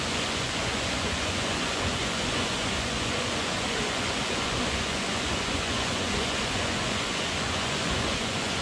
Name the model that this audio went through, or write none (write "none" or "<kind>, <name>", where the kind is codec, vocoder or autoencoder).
vocoder, Vocos